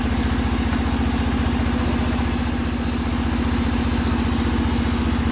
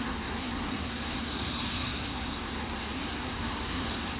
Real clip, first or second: first